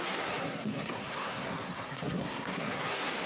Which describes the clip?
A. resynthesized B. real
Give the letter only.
A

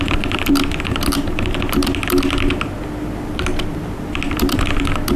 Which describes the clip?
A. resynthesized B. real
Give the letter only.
B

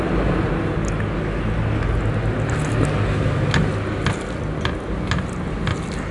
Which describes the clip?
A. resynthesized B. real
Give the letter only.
B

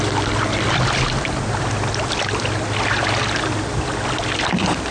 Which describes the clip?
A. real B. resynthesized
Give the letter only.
A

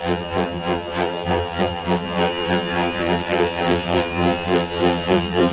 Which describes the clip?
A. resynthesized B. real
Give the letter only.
A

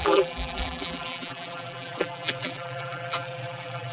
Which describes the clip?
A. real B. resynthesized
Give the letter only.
B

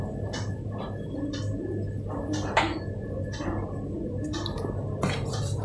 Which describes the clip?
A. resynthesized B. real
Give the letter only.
B